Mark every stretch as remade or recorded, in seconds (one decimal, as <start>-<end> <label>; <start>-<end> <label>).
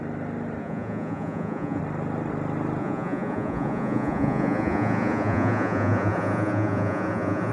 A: 0.0-0.6 recorded; 0.6-1.8 remade; 1.8-2.8 recorded; 2.8-7.5 remade